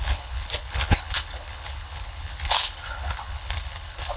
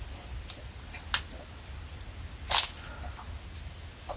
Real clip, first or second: second